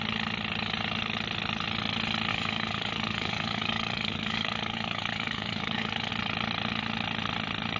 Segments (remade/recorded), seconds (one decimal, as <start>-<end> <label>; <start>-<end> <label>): 0.0-2.3 recorded; 2.3-6.1 remade; 6.1-7.8 recorded